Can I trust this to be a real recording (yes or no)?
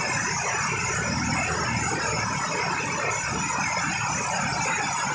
yes